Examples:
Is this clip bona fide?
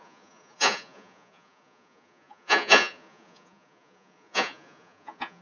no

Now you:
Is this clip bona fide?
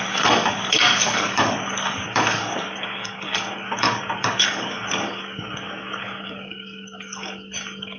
no